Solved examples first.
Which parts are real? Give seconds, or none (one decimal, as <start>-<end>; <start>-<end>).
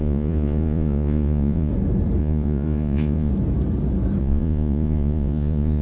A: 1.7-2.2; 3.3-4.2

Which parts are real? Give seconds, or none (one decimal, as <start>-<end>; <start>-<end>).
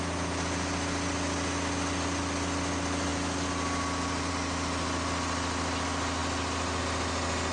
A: 0.0-7.5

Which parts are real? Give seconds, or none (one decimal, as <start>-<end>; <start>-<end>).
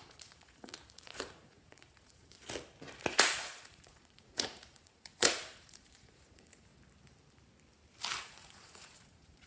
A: 2.4-3.0; 6.7-8.2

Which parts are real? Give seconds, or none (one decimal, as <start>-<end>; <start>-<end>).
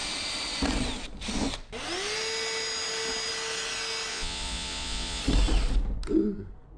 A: 0.0-4.1; 5.2-6.8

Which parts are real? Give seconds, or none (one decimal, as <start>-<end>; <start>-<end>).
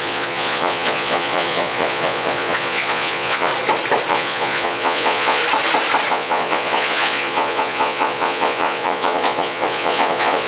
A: 3.5-4.1; 5.4-6.1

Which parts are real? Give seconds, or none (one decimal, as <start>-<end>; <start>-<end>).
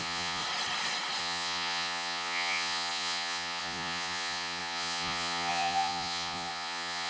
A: 0.4-1.2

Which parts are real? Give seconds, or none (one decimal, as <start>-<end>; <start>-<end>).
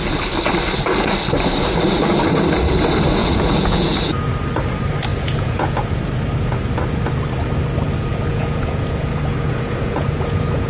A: 0.0-3.2; 4.3-5.1; 6.0-8.1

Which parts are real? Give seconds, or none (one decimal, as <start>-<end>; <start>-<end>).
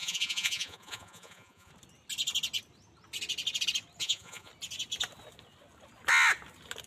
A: 1.7-4.0; 4.5-6.9